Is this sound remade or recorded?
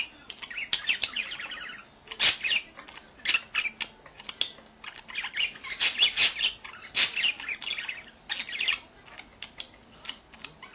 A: recorded